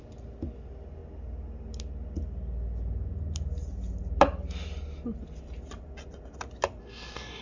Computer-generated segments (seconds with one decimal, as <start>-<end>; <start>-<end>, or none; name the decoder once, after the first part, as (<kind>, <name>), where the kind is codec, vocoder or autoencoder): 6.8-7.4 (codec, DAC)